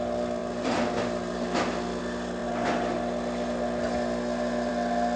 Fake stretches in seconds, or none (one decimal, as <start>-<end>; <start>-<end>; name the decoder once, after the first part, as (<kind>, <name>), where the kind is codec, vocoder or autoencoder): none